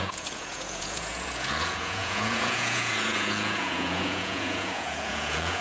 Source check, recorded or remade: remade